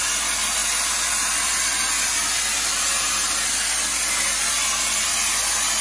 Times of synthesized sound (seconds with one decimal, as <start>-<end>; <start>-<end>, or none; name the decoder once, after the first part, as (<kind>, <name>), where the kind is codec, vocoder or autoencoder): none